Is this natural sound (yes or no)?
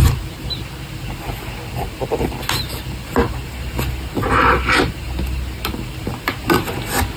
yes